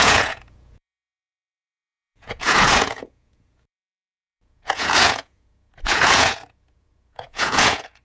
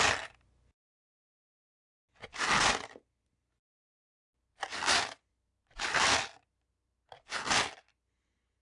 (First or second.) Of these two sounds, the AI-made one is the first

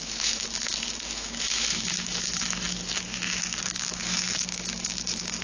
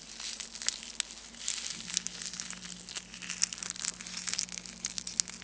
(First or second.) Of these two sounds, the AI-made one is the first